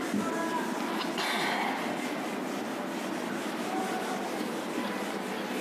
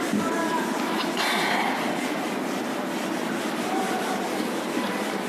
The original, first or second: first